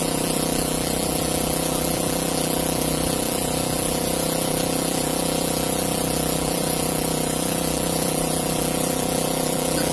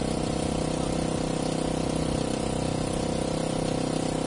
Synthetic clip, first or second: first